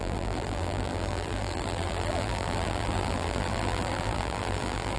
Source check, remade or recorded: remade